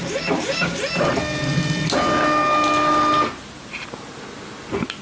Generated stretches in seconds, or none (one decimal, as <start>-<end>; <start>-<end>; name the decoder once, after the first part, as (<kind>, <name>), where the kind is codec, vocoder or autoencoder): 0.0-0.8 (codec, DAC)